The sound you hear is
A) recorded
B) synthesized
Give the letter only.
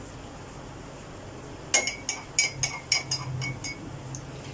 A